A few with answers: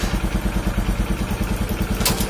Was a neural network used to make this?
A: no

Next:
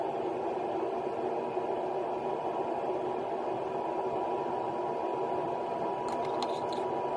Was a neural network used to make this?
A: no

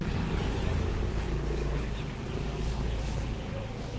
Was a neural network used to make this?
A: yes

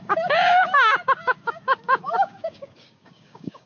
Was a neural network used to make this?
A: yes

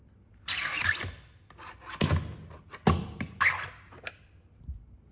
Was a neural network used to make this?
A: no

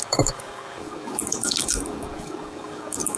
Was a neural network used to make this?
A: yes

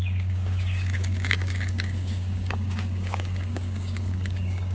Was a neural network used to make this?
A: yes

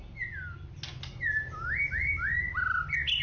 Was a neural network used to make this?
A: no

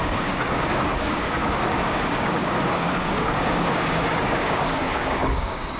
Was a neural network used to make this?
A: yes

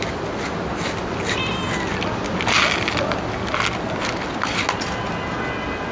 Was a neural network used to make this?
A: no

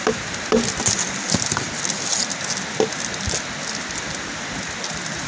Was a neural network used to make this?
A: no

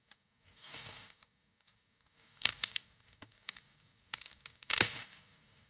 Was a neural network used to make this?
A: yes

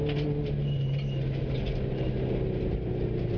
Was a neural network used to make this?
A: no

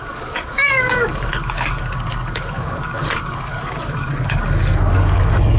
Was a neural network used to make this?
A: yes